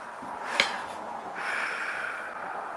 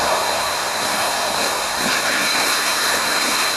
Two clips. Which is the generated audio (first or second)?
second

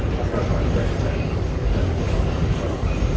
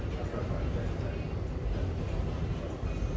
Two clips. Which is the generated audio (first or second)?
first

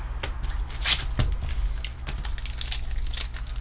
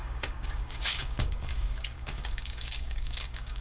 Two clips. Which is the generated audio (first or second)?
second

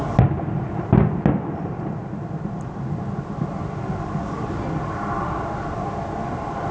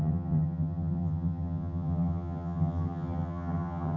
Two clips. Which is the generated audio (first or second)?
second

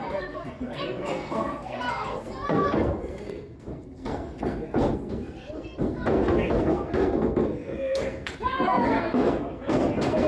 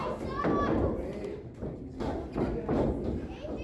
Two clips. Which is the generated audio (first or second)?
first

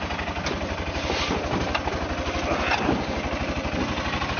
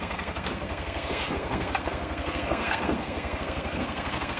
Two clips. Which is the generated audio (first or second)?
second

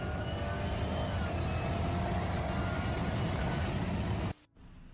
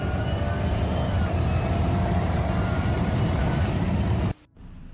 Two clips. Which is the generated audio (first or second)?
second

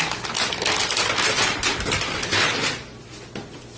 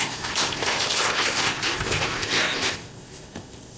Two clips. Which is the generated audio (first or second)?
second